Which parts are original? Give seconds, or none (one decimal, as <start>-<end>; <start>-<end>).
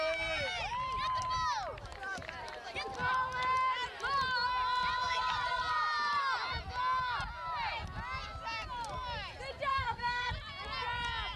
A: 0.0-9.7; 10.3-11.4